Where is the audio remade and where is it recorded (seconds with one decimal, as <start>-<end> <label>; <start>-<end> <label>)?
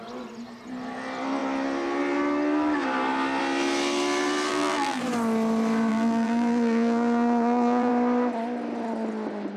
0.0-4.5 recorded; 4.5-5.0 remade; 5.0-5.9 recorded; 5.9-7.9 remade; 7.9-9.6 recorded